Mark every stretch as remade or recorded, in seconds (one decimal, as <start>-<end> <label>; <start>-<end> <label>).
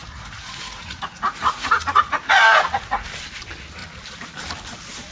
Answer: 0.0-3.1 remade; 3.1-5.1 recorded